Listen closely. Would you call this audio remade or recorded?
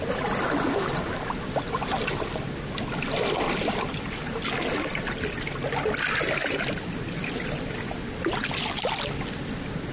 recorded